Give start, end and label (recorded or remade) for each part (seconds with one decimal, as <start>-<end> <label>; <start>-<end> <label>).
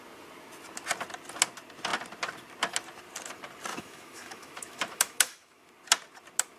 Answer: 0.0-3.7 recorded; 3.7-5.7 remade; 5.7-6.6 recorded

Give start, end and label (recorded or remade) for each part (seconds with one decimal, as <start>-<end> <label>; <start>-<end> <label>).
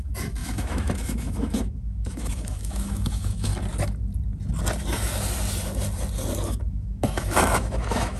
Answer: 0.0-3.5 remade; 3.5-6.7 recorded; 6.7-8.2 remade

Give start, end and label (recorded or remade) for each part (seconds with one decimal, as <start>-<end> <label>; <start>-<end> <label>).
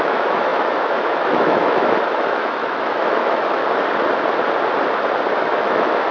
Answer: 0.0-3.6 remade; 3.6-5.4 recorded; 5.4-6.1 remade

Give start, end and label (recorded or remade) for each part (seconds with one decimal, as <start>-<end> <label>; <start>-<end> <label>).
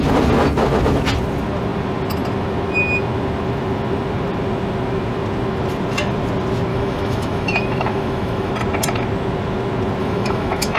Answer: 0.0-6.7 recorded; 6.7-8.5 remade; 8.5-10.0 recorded; 10.0-10.8 remade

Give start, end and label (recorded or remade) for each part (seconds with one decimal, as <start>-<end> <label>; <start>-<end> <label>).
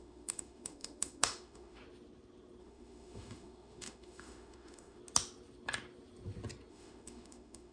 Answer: 0.0-1.8 remade; 1.8-2.6 recorded; 2.6-5.0 remade; 5.0-6.7 recorded; 6.7-7.7 remade